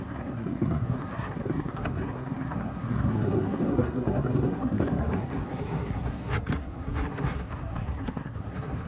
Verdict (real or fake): fake